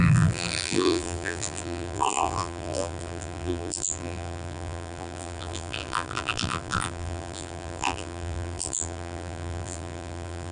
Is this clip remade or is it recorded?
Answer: remade